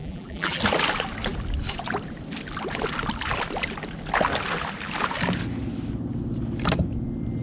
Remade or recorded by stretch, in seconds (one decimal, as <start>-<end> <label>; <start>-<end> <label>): 0.0-0.6 remade; 0.6-7.4 recorded